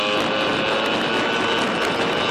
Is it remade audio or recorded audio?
recorded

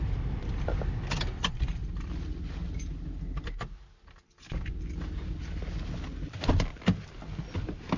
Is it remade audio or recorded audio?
recorded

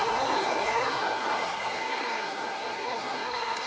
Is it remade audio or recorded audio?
remade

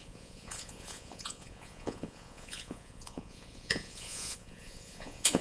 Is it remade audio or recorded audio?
remade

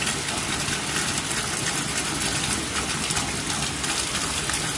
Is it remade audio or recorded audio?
recorded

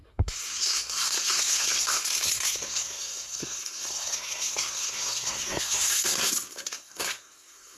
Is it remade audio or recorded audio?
remade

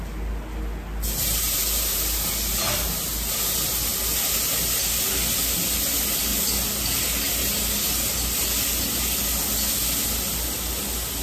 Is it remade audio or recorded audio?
recorded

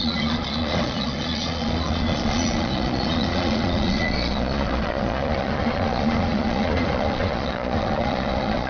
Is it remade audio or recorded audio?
remade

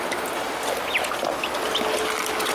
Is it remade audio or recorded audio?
recorded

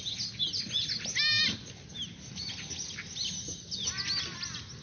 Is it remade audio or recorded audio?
recorded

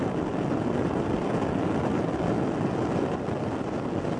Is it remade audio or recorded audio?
recorded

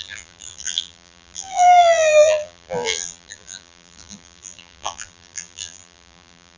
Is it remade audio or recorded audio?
remade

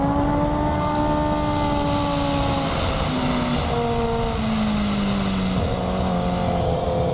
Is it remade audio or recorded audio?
recorded